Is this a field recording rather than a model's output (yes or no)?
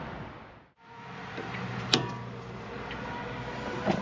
yes